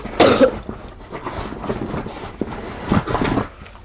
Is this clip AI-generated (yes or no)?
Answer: no